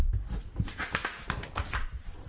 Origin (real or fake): real